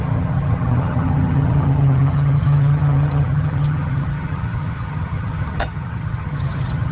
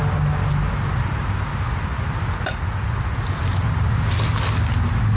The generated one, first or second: first